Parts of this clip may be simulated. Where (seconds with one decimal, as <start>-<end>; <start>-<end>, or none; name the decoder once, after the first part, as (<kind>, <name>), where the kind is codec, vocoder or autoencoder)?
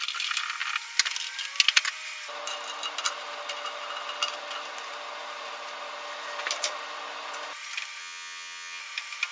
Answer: 8.0-8.8 (vocoder, HiFi-GAN)